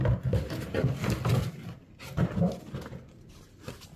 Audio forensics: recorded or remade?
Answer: recorded